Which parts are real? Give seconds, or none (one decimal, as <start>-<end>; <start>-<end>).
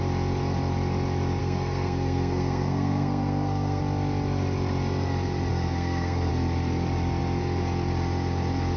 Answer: 0.0-1.4; 3.8-5.5; 6.3-8.8